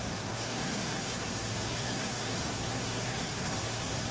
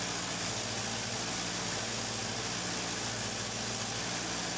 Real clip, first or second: second